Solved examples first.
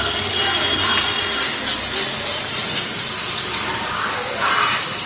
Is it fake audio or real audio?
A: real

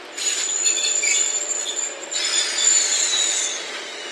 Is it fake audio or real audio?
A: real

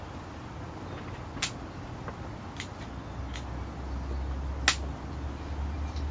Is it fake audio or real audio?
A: real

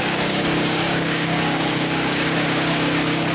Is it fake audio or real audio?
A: fake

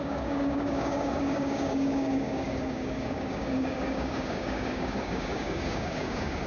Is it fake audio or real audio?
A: fake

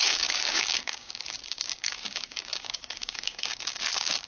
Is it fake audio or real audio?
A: fake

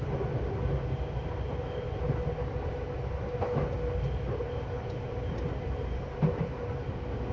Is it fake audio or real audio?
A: real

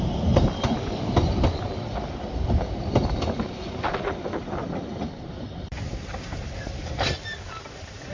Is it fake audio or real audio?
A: real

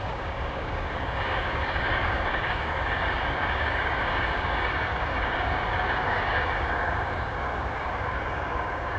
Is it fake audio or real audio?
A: fake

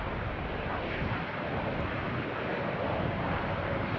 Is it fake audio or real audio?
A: real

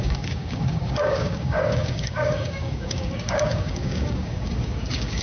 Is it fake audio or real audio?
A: fake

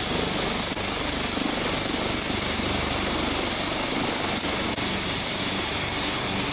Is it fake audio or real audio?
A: real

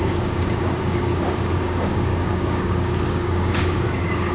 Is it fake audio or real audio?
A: fake